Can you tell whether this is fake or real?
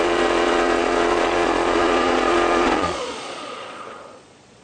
fake